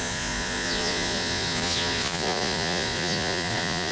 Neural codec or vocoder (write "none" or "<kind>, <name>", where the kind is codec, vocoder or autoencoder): vocoder, Vocos